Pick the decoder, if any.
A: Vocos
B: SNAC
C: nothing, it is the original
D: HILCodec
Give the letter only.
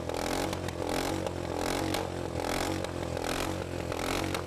C